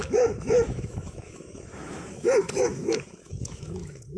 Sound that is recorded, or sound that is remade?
remade